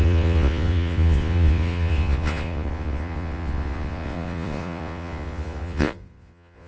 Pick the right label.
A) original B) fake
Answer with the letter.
B